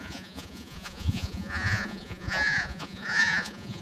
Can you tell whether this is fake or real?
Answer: fake